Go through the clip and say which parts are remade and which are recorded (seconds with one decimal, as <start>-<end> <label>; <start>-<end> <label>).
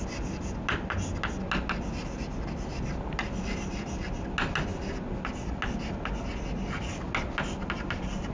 0.0-8.3 recorded